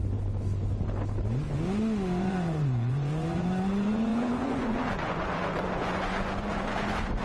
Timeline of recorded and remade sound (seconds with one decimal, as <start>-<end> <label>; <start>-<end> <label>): 0.0-2.2 recorded; 2.2-7.2 remade